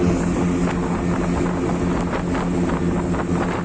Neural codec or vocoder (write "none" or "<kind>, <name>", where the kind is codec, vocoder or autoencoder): none